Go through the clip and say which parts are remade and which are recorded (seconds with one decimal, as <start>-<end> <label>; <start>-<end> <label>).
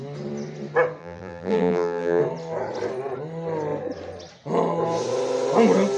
0.0-1.0 recorded; 1.0-2.2 remade; 2.2-6.0 recorded